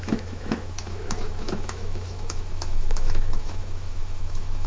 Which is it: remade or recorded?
remade